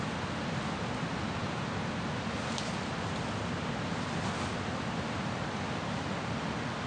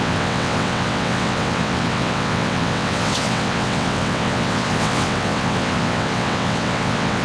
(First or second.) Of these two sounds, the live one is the first